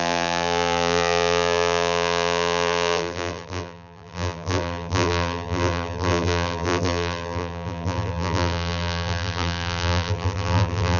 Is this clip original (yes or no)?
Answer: no